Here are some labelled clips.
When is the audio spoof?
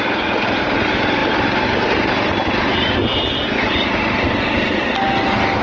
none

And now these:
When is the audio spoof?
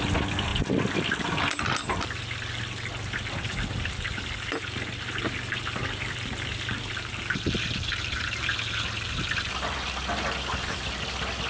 none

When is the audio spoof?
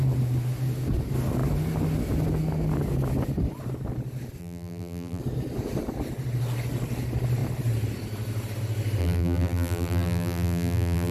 4.4-5.2 (vocoder, BigVGAN v2); 9.0-11.1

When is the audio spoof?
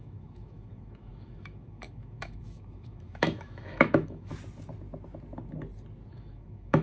0.0-4.3 (autoencoder, DAC-VAE); 6.1-6.8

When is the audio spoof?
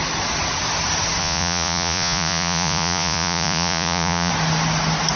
1.2-4.3 (vocoder, Vocos)